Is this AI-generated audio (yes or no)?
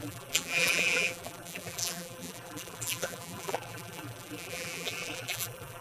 yes